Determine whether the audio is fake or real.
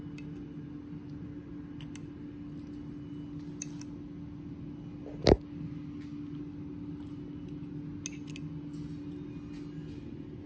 real